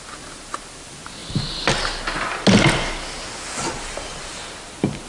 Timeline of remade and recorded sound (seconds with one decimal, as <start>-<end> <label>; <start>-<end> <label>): 0.0-5.1 recorded